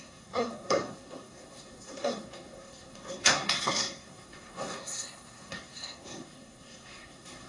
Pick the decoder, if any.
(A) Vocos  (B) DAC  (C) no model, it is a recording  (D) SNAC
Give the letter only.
D